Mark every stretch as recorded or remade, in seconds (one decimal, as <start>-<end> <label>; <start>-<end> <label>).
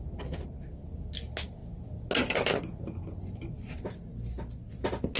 0.0-5.2 recorded